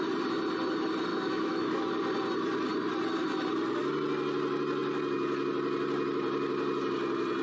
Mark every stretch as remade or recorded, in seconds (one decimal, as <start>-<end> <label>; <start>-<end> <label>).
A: 0.0-1.1 recorded; 1.1-1.9 remade; 1.9-7.4 recorded